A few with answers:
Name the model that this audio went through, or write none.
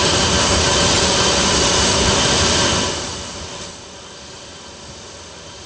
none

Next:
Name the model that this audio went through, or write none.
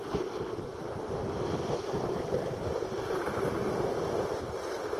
none